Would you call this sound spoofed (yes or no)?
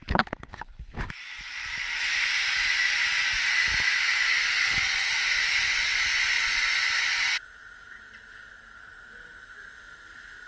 no